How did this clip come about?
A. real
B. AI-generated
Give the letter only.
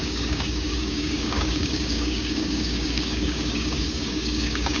B